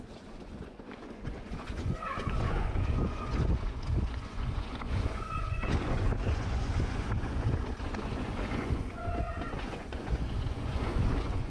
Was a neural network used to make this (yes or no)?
yes